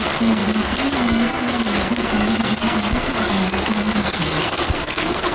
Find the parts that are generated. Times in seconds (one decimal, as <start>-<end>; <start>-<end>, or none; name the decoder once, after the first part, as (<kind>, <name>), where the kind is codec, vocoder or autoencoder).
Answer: 0.0-5.3 (codec, SNAC)